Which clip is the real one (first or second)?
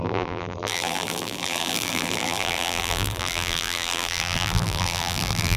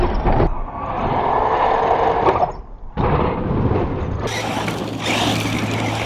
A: second